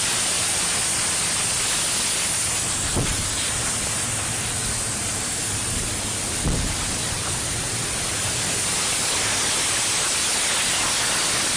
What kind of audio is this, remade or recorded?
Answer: recorded